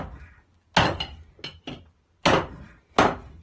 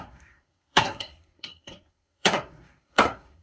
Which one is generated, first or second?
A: second